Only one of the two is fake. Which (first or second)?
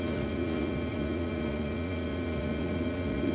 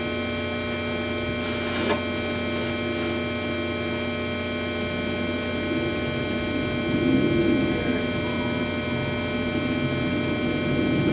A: first